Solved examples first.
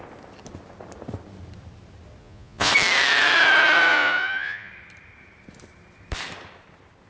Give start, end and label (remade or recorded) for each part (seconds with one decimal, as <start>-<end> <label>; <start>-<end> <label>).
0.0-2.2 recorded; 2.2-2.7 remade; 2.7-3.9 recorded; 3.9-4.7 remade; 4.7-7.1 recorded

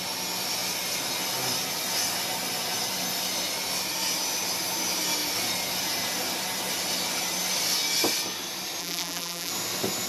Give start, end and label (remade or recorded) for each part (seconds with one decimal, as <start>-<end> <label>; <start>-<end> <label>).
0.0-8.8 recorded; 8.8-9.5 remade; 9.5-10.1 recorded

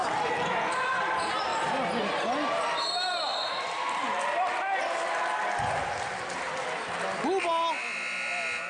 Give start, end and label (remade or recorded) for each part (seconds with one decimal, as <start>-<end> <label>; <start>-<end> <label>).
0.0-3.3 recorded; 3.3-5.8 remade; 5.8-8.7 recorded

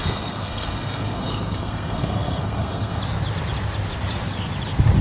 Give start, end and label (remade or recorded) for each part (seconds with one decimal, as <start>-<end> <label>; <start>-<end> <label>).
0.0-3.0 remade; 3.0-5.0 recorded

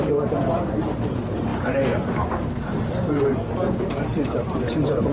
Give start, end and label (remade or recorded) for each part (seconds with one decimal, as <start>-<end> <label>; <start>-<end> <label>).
0.0-5.1 remade

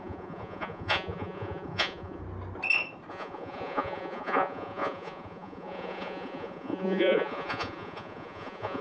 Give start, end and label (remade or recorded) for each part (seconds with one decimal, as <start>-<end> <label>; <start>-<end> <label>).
0.0-2.2 remade; 2.2-3.1 recorded; 3.1-8.8 remade

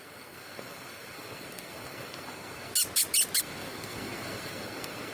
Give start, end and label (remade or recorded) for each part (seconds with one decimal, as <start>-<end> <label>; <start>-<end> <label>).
0.0-2.7 remade; 2.7-3.4 recorded; 3.4-5.1 remade

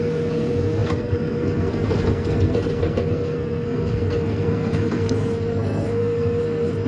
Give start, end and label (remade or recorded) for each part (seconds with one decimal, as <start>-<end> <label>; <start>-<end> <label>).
0.0-6.9 remade